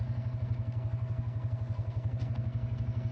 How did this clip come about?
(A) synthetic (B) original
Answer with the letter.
A